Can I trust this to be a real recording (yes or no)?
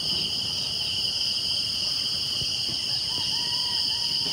yes